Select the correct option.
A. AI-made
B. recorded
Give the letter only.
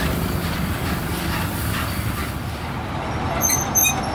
B